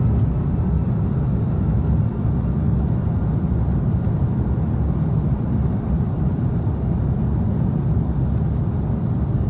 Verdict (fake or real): real